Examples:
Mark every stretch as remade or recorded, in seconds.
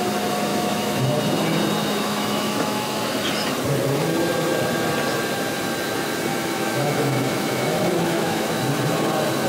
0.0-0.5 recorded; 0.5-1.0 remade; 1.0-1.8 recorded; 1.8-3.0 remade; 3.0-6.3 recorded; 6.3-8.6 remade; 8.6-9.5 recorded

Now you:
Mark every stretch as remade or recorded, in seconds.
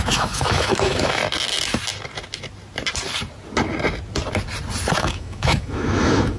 0.0-1.2 remade; 1.2-5.0 recorded; 5.0-6.4 remade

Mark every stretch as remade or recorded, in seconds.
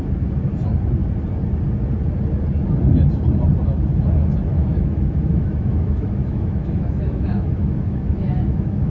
0.0-4.5 recorded; 4.5-8.9 remade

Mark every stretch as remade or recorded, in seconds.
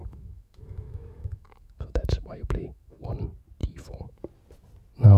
0.0-3.1 remade; 3.1-3.6 recorded; 3.6-4.2 remade; 4.2-5.2 recorded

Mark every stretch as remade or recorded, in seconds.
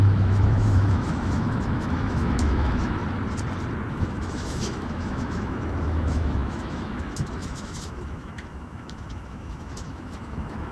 0.0-3.0 remade; 3.0-3.9 recorded; 3.9-10.7 remade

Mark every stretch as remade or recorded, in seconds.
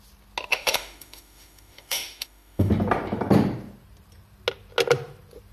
0.0-0.5 recorded; 0.5-2.7 remade; 2.7-5.5 recorded